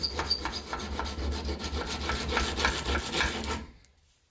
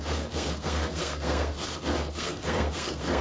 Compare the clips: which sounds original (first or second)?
first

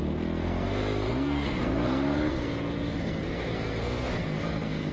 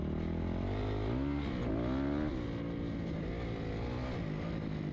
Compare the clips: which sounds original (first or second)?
second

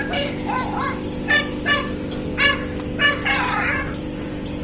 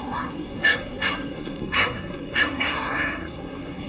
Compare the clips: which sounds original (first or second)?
first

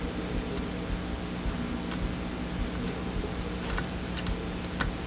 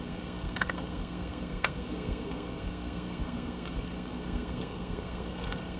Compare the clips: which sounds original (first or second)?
first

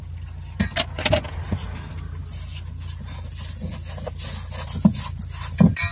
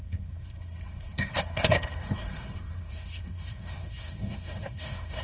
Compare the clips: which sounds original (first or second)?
first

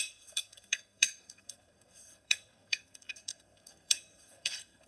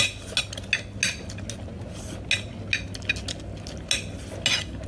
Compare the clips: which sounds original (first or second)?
second